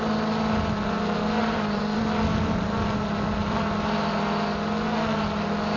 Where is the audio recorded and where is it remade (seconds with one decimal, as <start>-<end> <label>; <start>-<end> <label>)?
0.0-1.4 recorded; 1.4-2.0 remade; 2.0-5.8 recorded